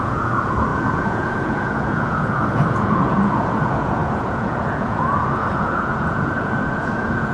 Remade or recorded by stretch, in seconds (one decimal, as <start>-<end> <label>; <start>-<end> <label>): 0.0-7.3 remade